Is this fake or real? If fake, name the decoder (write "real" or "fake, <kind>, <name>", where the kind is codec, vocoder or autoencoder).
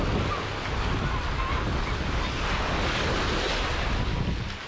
real